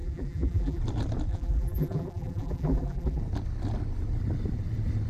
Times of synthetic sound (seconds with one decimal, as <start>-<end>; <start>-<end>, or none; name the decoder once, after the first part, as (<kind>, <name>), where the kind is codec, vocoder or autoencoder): 0.0-0.8 (vocoder, BigVGAN v2); 1.3-3.2

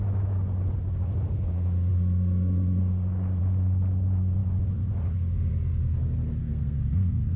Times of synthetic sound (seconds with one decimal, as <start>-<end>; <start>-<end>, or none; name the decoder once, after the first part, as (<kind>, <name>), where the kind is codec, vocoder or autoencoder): 6.4-7.4 (codec, SNAC)